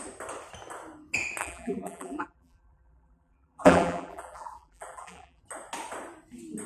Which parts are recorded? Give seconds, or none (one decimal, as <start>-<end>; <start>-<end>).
0.0-1.4; 5.4-6.7